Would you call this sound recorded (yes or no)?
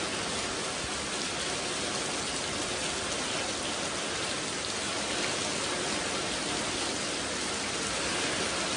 yes